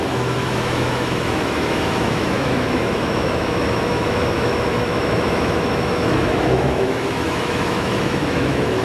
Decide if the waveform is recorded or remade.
remade